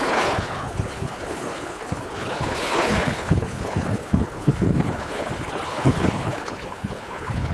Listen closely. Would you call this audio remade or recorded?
remade